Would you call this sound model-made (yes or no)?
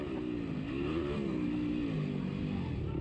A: no